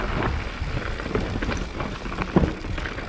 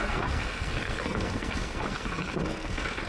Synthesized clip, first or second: second